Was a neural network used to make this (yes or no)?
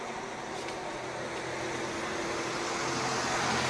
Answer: no